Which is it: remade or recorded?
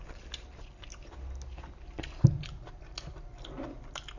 recorded